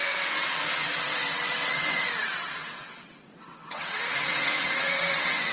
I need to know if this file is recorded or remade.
remade